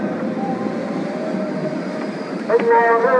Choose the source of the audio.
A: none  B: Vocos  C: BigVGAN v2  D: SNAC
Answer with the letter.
C